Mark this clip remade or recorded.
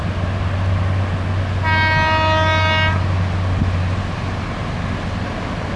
recorded